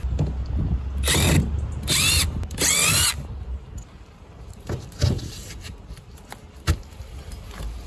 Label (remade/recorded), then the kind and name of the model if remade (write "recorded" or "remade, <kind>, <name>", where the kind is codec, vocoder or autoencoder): recorded